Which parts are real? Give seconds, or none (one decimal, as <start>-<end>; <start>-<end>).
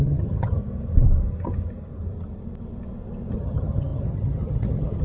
0.6-3.3